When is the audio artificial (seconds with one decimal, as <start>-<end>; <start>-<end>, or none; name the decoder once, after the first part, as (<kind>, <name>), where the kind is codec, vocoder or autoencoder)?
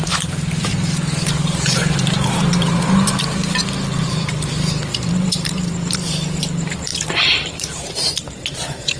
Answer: 0.0-0.7 (vocoder, BigVGAN v2); 1.3-3.4; 4.0-9.0